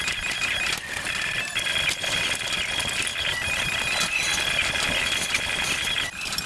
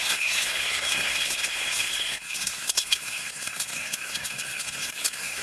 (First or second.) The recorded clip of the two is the first